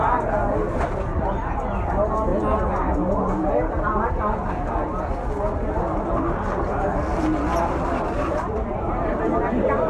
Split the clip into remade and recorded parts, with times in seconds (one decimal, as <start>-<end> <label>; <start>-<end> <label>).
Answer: 0.0-7.5 recorded; 7.5-9.9 remade